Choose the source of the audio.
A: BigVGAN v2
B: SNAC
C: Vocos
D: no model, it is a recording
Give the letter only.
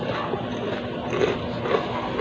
D